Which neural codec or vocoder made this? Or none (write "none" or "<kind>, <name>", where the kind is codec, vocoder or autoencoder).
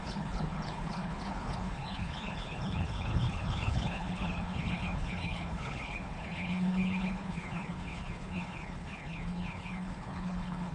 codec, HILCodec